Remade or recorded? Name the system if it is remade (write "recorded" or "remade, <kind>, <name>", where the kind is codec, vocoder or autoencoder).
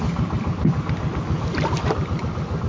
recorded